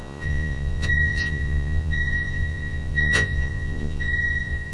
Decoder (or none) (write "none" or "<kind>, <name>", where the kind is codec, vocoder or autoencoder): vocoder, Vocos